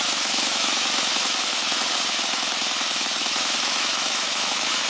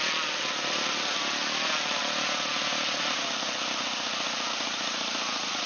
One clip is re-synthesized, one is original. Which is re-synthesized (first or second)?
first